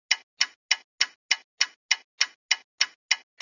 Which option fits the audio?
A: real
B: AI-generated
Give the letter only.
A